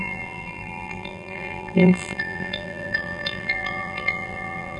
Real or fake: fake